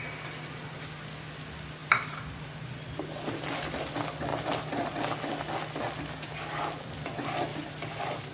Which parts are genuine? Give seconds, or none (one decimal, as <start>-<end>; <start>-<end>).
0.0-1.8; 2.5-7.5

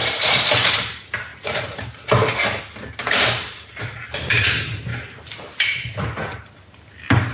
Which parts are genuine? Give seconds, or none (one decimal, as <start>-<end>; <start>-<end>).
0.7-1.3; 2.6-4.9; 6.7-7.3

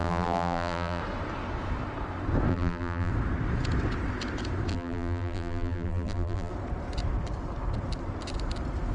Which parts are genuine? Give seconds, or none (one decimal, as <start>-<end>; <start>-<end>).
1.0-2.5; 3.1-4.7; 6.5-8.9

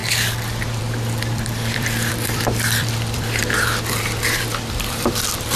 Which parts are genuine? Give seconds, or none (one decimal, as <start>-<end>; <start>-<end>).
0.0-0.8; 3.4-4.0